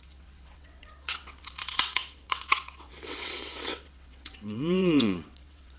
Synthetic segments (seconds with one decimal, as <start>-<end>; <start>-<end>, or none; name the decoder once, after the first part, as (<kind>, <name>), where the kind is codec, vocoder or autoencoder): 0.0-5.8 (vocoder, WaveNeXt)

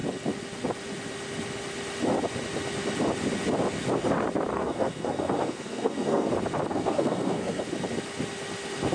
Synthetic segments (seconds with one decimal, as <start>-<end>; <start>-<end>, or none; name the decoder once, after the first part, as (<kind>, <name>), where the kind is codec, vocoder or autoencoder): 4.5-6.3 (codec, SNAC); 6.7-7.6

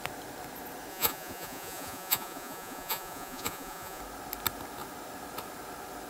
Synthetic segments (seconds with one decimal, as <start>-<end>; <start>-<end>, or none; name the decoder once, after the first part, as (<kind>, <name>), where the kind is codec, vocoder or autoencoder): 0.9-4.0 (vocoder, Vocos)

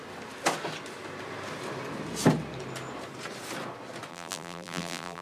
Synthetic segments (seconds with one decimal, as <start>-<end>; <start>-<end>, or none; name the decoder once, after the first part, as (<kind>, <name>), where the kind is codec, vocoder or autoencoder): 4.1-5.2 (vocoder, BigVGAN v2)

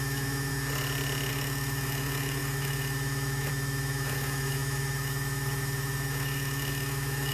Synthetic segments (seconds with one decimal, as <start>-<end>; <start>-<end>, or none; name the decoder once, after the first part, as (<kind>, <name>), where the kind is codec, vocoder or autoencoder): 0.0-0.5 (autoencoder, DAC-VAE); 1.3-7.3

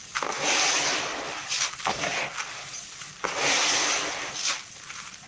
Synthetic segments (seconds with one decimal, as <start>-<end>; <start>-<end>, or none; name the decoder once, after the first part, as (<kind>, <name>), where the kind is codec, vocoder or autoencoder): 1.1-1.9 (vocoder, BigVGAN v2)